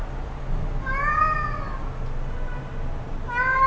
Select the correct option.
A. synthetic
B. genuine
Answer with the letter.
B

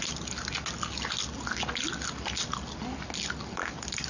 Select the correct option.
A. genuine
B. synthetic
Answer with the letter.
A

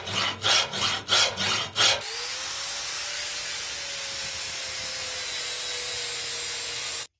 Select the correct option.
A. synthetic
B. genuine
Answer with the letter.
B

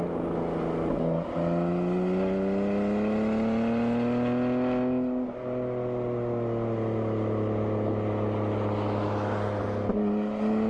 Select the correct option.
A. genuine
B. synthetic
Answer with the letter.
A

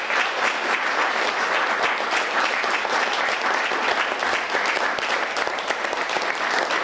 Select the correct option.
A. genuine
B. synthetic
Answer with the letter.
A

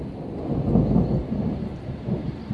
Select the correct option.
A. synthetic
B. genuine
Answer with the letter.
B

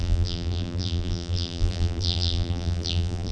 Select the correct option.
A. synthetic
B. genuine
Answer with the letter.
A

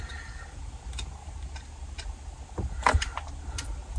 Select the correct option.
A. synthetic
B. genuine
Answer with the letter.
B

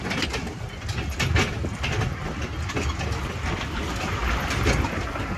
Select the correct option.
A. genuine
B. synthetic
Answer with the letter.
A